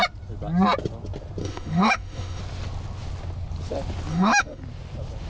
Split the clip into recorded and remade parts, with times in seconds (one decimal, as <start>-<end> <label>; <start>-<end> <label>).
0.0-1.4 recorded; 1.4-2.4 remade; 2.4-4.1 recorded; 4.1-4.6 remade; 4.6-5.3 recorded